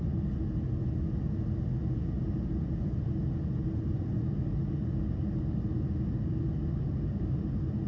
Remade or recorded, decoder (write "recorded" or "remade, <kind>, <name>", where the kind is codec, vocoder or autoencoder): recorded